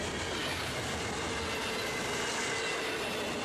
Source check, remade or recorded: recorded